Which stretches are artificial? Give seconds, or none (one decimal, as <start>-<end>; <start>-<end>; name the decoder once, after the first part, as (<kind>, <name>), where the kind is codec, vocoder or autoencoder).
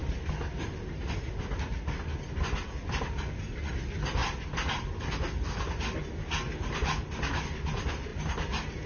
none